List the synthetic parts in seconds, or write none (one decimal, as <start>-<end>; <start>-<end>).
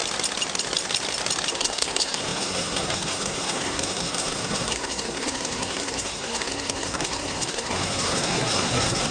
1.5-9.1